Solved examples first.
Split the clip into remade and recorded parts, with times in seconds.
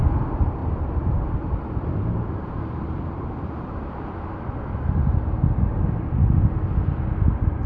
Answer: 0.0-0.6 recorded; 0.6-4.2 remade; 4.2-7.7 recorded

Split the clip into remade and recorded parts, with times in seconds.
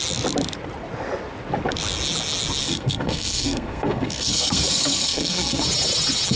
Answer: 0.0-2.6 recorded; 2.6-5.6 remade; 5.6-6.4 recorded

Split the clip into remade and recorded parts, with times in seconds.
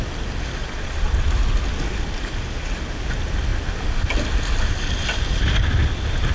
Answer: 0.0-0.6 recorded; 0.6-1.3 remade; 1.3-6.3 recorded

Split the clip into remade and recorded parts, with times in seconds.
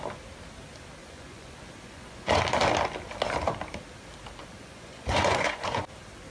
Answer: 0.0-1.0 recorded; 1.0-2.4 remade; 2.4-4.4 recorded; 4.4-5.8 remade; 5.8-6.3 recorded